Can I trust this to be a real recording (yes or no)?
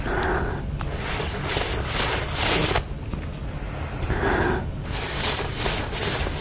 yes